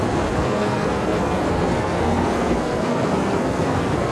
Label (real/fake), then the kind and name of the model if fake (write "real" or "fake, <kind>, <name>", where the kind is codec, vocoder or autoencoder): fake, codec, SNAC